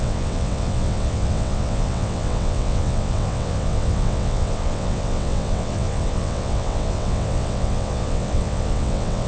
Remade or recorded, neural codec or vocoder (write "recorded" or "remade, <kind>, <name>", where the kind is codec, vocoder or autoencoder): remade, vocoder, WaveNeXt